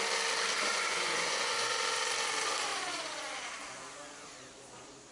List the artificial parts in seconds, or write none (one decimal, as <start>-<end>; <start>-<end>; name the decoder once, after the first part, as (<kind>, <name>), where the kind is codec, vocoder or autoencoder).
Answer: 0.7-1.7 (vocoder, Vocos)